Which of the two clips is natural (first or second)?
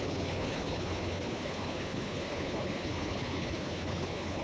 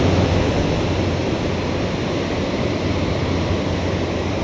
second